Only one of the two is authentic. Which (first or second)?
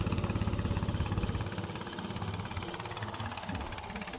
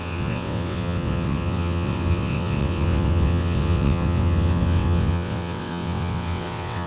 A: first